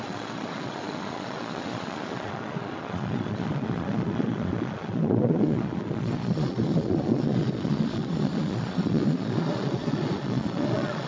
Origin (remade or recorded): remade